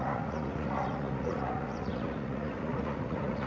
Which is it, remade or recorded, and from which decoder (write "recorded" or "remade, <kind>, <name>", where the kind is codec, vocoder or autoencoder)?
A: remade, vocoder, Vocos